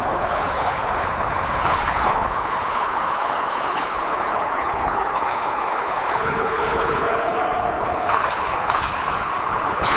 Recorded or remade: remade